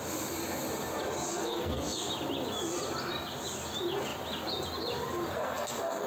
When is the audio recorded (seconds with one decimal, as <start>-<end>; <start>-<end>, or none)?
0.0-1.3; 2.1-5.3